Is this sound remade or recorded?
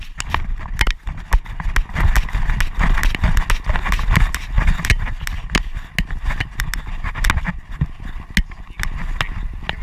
recorded